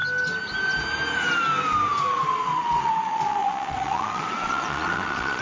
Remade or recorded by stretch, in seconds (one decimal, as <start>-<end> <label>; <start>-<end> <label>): 0.0-1.9 recorded; 1.9-5.4 remade